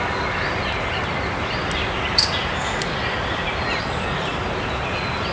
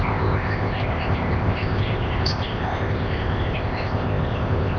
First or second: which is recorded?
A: first